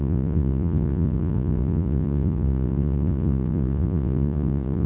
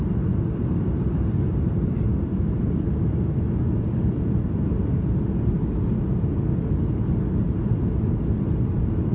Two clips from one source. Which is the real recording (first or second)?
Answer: second